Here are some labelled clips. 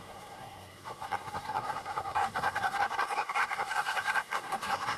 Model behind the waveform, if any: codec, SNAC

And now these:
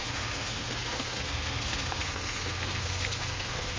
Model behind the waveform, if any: codec, SNAC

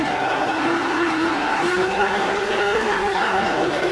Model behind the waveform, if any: codec, SNAC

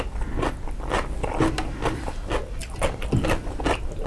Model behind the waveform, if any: none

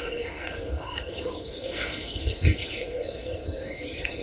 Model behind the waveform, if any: codec, SNAC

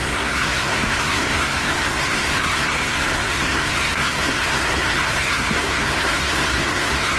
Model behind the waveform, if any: codec, SNAC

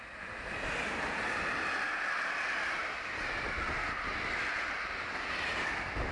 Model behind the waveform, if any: none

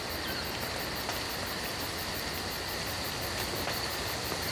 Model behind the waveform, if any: none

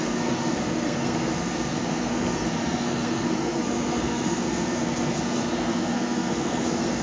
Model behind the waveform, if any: codec, SNAC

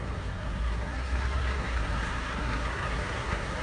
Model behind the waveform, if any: codec, SNAC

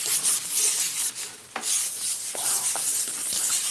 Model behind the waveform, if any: none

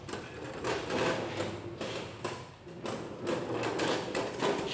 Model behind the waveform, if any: none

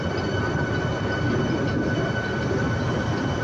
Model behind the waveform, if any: none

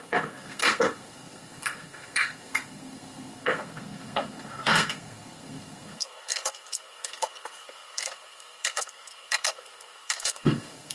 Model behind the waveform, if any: codec, SNAC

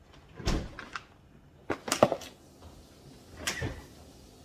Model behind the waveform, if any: none